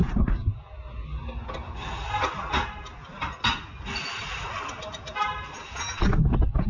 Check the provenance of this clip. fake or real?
real